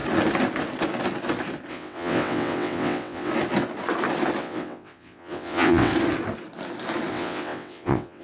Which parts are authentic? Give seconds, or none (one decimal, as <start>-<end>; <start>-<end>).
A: 0.0-1.7; 3.3-4.4; 5.9-7.1

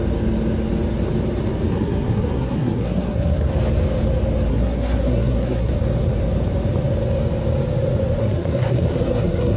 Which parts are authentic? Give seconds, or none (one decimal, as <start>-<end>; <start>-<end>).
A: 0.0-1.7; 3.5-4.5; 5.7-8.2

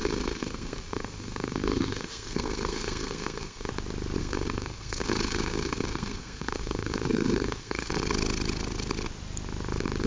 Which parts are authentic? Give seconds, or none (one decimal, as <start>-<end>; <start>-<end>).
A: 3.7-4.2; 7.9-10.1

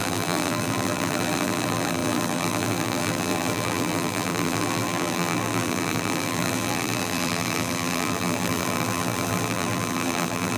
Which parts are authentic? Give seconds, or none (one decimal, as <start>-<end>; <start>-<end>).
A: none

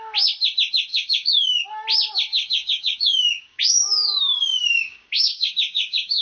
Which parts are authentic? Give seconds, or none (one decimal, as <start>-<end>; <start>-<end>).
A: 0.0-0.9; 1.6-2.3

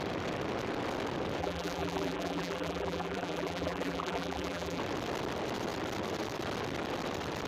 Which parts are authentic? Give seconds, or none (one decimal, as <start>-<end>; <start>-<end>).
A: 0.0-1.4; 4.8-7.5

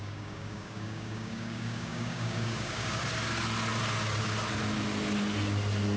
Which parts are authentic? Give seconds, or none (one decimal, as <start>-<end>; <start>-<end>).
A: 3.0-6.0